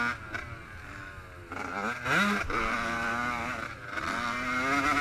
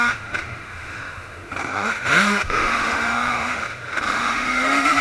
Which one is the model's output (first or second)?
second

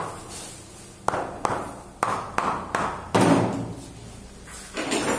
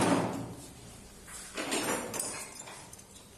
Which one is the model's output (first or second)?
second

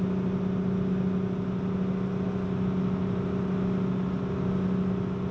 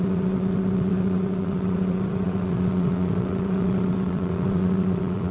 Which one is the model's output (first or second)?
second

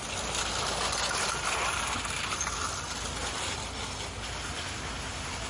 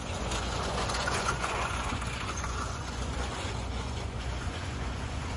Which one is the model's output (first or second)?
second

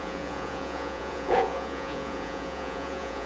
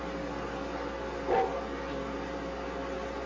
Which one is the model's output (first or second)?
first